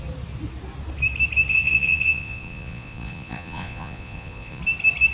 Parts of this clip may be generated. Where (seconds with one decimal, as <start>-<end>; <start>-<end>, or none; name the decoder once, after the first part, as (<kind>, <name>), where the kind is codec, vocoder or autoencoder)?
1.5-4.6 (vocoder, Vocos)